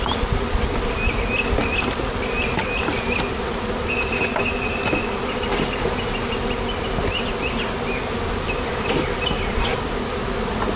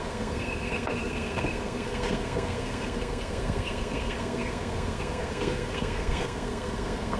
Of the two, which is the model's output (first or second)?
second